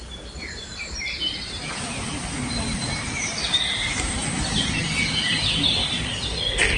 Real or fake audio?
real